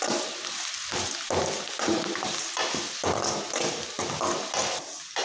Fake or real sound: real